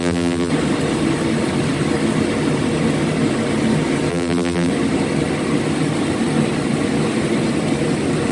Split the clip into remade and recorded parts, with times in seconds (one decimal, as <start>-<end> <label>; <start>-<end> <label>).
0.0-0.5 remade; 0.5-4.1 recorded; 4.1-4.7 remade; 4.7-8.3 recorded